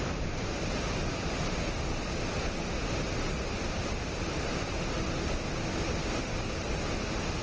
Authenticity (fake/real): real